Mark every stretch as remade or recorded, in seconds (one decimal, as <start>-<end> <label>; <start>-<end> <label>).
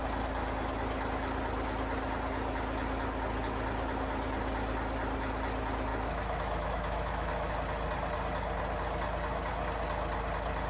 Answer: 0.0-5.9 recorded; 5.9-7.5 remade; 7.5-10.7 recorded